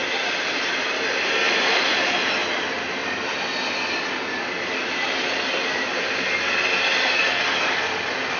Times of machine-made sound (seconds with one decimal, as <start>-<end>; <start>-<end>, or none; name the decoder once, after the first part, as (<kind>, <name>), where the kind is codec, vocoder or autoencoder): none